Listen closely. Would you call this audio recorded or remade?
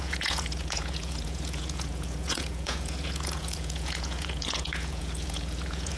remade